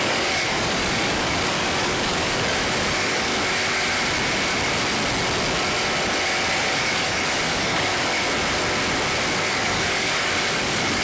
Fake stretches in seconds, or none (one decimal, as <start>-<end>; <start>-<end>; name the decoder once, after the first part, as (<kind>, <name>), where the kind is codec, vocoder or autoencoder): 0.0-3.3 (codec, DAC); 6.5-7.9; 9.4-11.0